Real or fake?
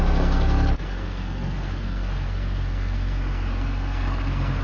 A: fake